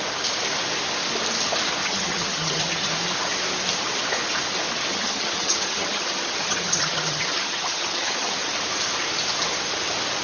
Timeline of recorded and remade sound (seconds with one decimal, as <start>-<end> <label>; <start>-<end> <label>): 0.0-1.8 recorded; 1.8-2.9 remade; 2.9-4.9 recorded; 4.9-8.5 remade; 8.5-10.2 recorded